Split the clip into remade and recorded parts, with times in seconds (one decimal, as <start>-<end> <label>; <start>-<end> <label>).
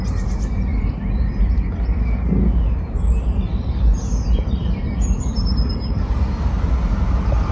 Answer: 0.0-7.5 recorded